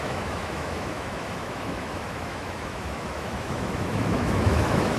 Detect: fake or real fake